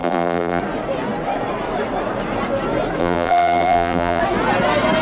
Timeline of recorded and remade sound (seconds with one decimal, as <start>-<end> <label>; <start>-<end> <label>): 0.0-0.6 remade; 0.6-3.0 recorded; 3.0-4.2 remade; 4.2-5.0 recorded